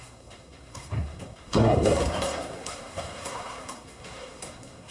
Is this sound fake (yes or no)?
yes